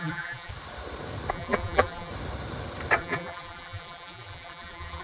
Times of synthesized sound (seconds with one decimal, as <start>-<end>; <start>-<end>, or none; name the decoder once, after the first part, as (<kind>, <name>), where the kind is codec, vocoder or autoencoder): 0.0-0.5 (vocoder, BigVGAN v2); 1.3-2.1; 3.0-5.0